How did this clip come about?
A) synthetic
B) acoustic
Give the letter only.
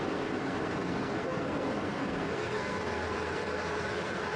A